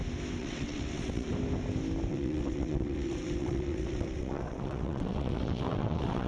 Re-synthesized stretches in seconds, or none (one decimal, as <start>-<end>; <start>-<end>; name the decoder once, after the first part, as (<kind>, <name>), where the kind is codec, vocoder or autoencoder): 0.4-1.3 (vocoder, WaveNeXt); 2.1-6.3